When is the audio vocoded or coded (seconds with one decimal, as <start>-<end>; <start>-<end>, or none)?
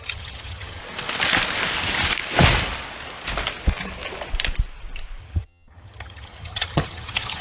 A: 0.0-0.8; 5.2-7.4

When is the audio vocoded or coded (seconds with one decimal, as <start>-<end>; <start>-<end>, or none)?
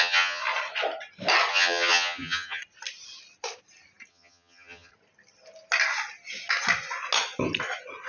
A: 0.0-0.4; 1.5-2.6; 4.1-4.9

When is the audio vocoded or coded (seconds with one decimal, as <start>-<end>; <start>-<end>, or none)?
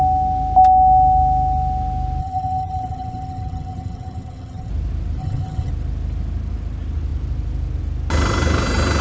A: 2.2-4.7; 5.2-5.7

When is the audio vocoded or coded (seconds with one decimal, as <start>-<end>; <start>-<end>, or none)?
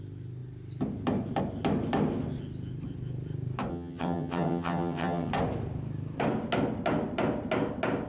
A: 3.7-5.3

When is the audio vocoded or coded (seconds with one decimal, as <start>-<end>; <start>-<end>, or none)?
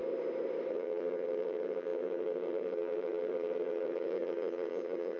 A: 0.7-5.2